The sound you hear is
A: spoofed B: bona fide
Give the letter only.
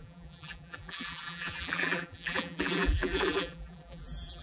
A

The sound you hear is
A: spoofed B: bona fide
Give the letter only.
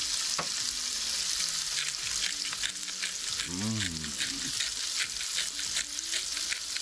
B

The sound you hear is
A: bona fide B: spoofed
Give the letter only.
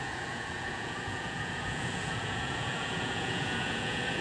B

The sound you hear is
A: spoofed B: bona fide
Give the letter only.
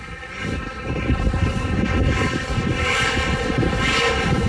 A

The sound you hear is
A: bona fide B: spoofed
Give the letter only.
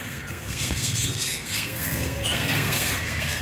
B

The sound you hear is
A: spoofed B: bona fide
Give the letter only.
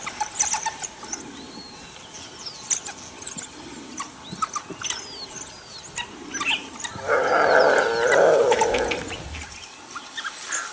B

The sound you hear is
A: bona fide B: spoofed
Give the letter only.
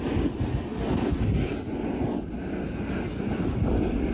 A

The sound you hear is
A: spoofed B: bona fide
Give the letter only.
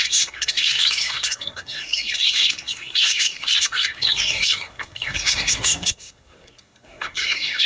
A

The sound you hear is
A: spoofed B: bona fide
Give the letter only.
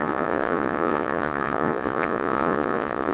A